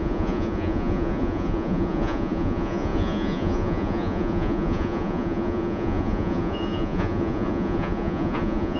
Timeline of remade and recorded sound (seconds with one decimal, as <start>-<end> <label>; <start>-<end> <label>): 0.0-8.8 remade